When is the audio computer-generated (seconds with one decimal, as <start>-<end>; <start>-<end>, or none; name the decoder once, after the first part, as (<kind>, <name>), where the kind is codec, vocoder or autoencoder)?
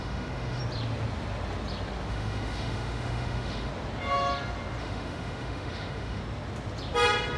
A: 0.0-0.6 (autoencoder, DAC-VAE); 2.1-3.7; 4.8-6.2